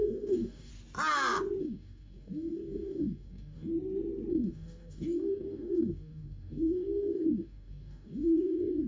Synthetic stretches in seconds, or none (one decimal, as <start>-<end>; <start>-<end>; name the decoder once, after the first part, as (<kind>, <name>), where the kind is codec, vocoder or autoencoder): 0.0-0.7 (codec, DAC); 1.6-3.7; 4.3-8.9